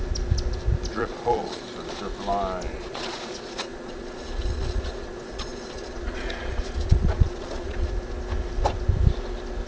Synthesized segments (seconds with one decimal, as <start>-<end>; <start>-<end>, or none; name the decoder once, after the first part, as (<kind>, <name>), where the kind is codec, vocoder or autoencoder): 0.9-1.6 (vocoder, Vocos); 2.7-7.9